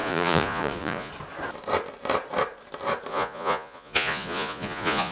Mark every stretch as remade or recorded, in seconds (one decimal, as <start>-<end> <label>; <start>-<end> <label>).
0.0-1.1 remade; 1.1-3.1 recorded; 3.1-5.1 remade